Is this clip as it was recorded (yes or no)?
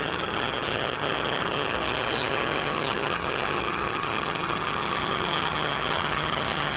no